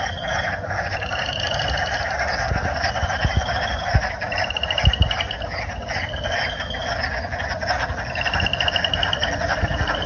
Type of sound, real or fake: real